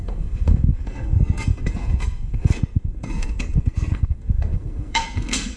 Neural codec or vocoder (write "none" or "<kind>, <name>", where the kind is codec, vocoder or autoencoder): codec, SNAC